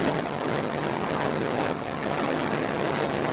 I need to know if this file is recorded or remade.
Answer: remade